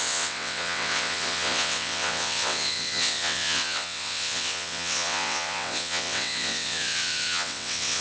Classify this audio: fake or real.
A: fake